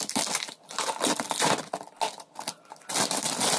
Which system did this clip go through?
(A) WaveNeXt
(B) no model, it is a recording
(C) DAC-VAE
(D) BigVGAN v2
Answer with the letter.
B